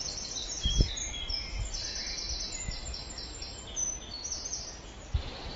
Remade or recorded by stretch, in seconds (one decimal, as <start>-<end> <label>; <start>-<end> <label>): 0.0-5.6 recorded